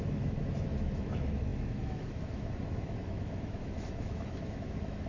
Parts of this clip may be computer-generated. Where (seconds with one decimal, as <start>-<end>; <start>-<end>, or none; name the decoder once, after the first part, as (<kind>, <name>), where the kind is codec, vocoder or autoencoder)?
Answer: 0.0-5.1 (autoencoder, DAC-VAE)